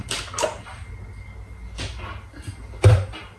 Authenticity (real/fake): real